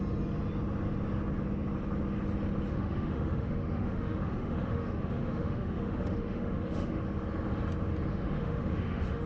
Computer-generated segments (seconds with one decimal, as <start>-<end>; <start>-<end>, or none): 2.7-7.0; 8.1-9.3